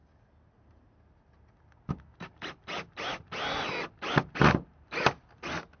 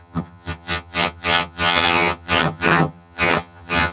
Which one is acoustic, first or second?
first